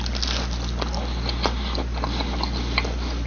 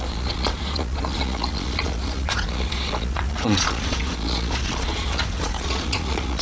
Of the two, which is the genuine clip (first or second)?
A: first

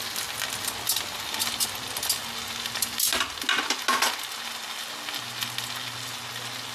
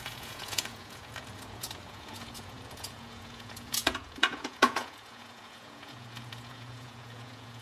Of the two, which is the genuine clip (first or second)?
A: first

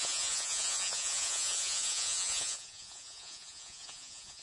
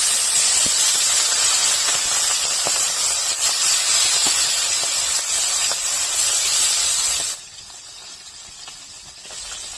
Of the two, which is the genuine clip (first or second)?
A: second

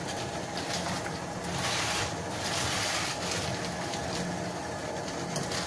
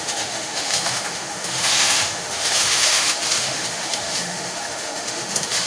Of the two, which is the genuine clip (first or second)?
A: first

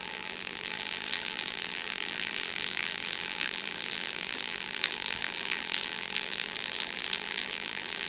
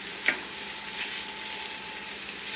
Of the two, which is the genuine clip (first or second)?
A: second